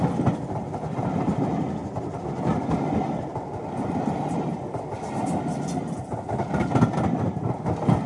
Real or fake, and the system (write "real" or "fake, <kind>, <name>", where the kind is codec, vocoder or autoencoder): real